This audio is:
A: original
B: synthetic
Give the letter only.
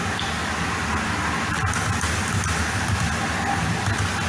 A